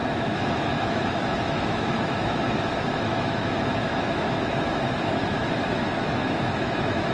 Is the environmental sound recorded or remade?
remade